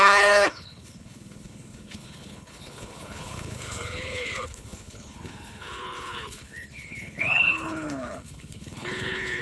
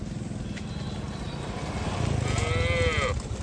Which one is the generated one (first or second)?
first